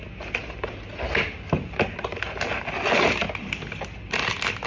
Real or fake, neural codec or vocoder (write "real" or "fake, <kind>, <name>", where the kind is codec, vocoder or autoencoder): real